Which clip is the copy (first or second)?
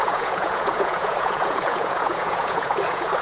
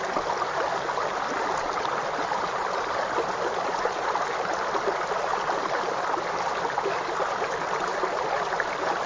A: first